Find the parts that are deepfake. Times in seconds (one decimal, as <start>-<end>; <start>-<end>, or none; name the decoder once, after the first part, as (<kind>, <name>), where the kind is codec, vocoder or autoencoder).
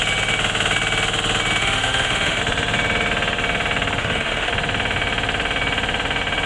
1.6-2.4 (autoencoder, DAC-VAE); 4.0-4.5